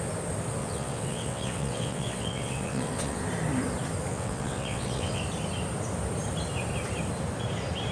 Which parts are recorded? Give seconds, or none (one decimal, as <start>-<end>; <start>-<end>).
0.0-0.6; 3.2-4.1; 5.2-7.9